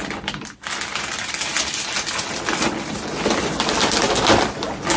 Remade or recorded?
recorded